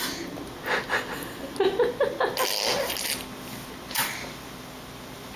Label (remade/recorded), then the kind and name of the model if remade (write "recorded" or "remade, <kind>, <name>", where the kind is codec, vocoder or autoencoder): recorded